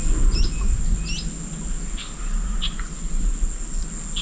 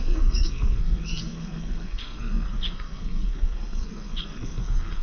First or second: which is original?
first